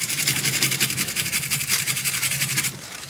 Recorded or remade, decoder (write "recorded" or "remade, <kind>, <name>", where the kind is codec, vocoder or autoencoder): remade, vocoder, BigVGAN v2